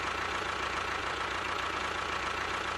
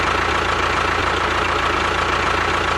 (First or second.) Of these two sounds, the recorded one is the second